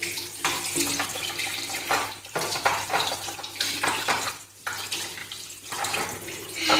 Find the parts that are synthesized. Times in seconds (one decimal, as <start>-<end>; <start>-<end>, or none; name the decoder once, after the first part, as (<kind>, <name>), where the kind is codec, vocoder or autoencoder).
1.5-3.1 (vocoder, BigVGAN v2); 5.2-5.8